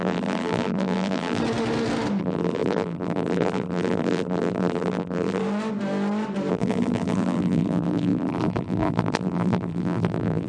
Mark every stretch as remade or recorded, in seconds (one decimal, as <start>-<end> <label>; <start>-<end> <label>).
0.0-1.4 remade; 1.4-2.2 recorded; 2.2-5.4 remade; 5.4-6.5 recorded; 6.5-10.5 remade